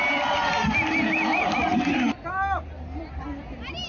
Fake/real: real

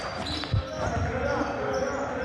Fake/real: real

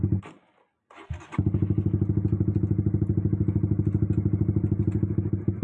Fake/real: real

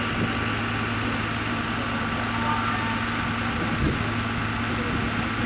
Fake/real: real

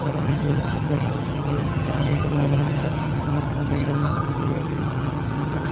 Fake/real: fake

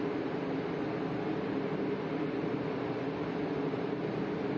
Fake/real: real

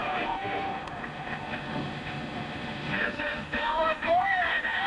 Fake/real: fake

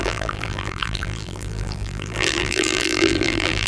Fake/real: fake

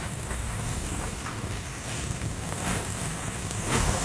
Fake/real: fake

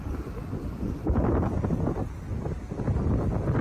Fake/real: real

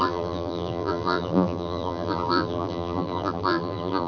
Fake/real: fake